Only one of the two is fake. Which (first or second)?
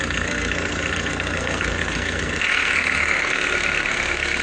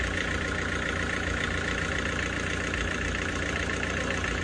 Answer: first